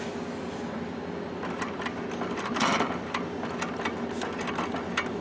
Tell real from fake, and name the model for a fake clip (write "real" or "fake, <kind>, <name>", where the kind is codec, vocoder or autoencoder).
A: real